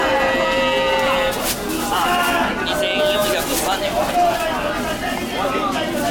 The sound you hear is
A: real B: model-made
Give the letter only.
A